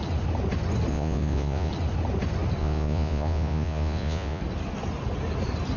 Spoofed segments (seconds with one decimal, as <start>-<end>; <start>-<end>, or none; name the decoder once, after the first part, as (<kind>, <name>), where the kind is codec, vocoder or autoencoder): 0.9-1.7 (vocoder, Vocos); 2.6-4.4